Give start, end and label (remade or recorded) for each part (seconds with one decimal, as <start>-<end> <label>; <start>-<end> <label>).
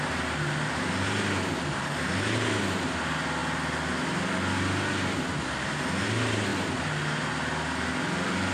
0.0-8.5 recorded